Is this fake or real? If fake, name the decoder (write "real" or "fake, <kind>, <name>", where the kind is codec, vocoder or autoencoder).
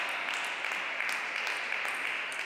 real